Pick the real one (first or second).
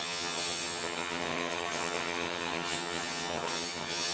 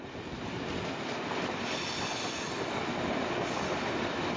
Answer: second